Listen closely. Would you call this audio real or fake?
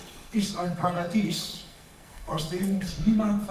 fake